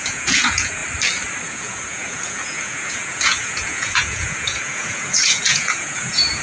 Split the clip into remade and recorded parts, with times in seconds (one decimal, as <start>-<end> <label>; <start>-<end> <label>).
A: 0.0-0.8 remade; 0.8-1.4 recorded; 1.4-6.4 remade